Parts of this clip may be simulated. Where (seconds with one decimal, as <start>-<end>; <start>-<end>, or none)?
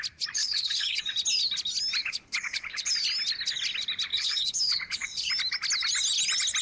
0.4-1.0; 2.0-2.9; 4.1-5.3